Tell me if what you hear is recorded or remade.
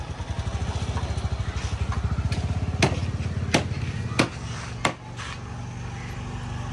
recorded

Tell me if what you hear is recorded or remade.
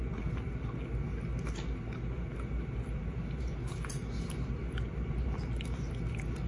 recorded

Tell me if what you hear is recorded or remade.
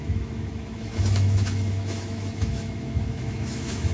remade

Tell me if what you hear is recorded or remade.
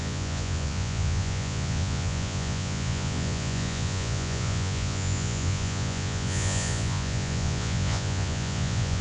remade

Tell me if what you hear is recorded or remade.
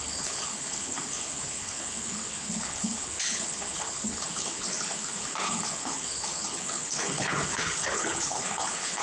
remade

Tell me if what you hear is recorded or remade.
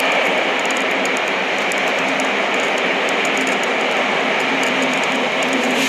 recorded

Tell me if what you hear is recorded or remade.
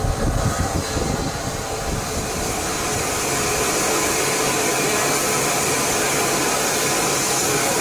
recorded